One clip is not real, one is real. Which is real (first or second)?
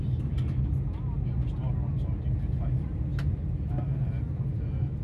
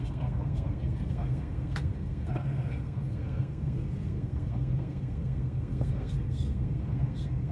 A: first